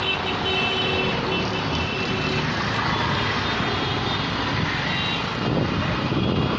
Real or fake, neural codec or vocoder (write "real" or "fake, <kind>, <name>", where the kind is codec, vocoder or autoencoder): real